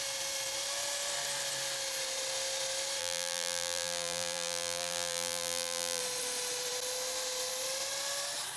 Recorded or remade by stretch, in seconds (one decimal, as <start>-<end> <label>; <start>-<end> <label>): 0.0-3.0 recorded; 3.0-6.0 remade; 6.0-8.6 recorded